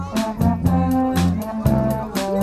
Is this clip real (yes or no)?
yes